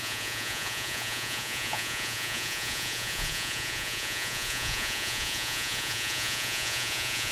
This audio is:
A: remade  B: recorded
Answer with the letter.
A